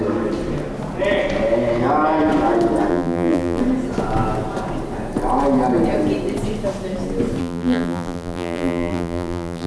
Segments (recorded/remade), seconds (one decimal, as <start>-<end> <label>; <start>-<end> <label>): 0.0-2.9 recorded; 2.9-3.6 remade; 3.6-7.4 recorded; 7.4-9.7 remade